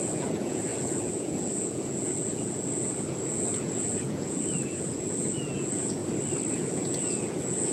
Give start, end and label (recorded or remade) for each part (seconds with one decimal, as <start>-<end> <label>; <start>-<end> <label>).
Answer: 0.0-6.0 remade; 6.0-6.5 recorded; 6.5-7.7 remade